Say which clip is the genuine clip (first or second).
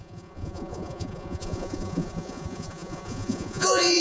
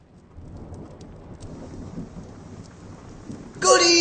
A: second